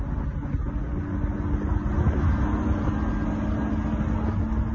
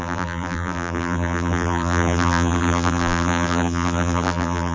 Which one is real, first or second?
first